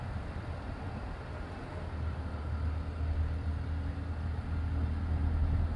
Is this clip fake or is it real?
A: real